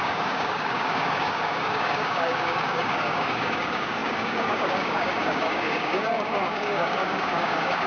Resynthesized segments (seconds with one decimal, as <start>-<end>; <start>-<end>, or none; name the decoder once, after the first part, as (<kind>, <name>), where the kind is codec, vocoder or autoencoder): 0.0-7.9 (codec, DAC)